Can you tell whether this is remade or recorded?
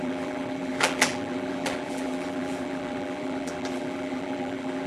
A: remade